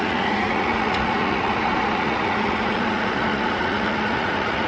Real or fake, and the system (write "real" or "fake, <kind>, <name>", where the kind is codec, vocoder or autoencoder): fake, vocoder, Vocos